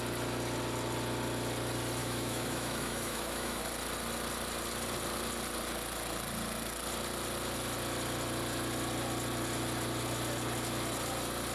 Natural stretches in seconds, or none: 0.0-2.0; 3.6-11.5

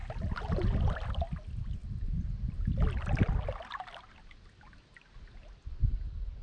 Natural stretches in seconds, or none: 0.0-6.4

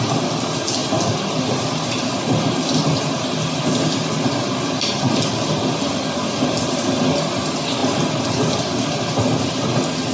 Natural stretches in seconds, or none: 0.0-10.1

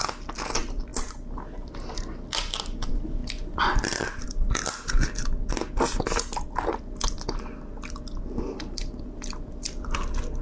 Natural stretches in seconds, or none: 0.0-10.4

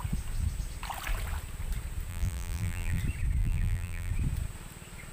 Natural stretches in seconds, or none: 0.0-2.1; 3.0-3.4; 4.1-5.1

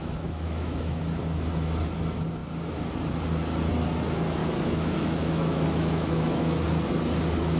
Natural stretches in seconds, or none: 1.0-4.4; 6.6-7.6

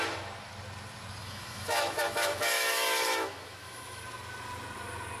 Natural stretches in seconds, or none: 0.0-1.2; 4.0-5.2

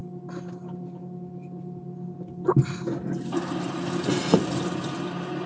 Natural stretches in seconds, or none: 0.0-5.5